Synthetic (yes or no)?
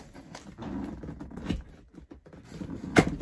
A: no